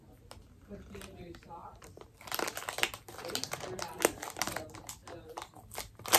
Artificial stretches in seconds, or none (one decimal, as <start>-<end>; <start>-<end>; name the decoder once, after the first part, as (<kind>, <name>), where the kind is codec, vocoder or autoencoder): 1.6-2.2 (vocoder, BigVGAN v2)